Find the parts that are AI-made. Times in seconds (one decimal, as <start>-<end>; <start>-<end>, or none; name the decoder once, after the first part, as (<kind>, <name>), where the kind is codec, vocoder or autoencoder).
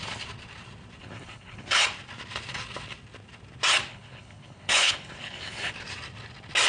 1.0-1.8 (codec, HILCodec); 3.9-5.7